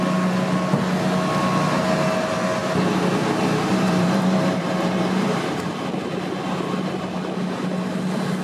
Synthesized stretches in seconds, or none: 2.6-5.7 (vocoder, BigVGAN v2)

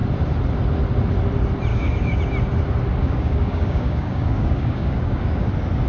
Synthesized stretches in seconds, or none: 1.7-2.2 (codec, DAC); 3.0-5.5

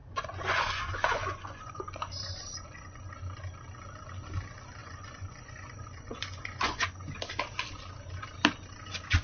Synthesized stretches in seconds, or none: 0.0-3.0 (vocoder, Vocos); 4.8-7.2

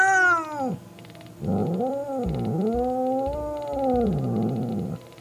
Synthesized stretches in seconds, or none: none

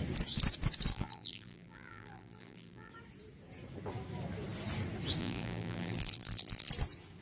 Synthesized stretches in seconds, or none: 0.9-2.9 (vocoder, BigVGAN v2); 5.2-6.7

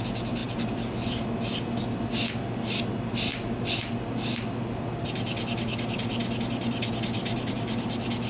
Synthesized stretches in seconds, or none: none

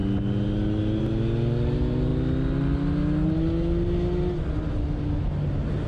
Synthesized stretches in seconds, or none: none

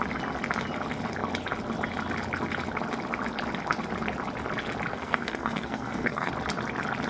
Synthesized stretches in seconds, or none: 4.9-6.3 (codec, SNAC)